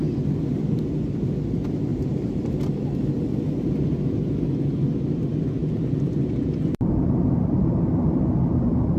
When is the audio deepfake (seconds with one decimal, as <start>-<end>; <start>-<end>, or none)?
1.9-2.5; 5.6-8.2